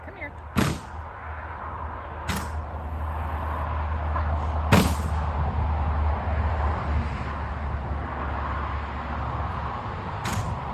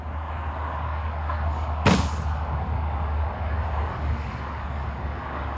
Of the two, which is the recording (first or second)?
first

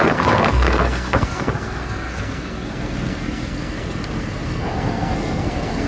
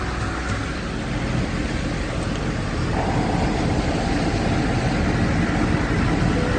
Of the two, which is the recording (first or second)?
second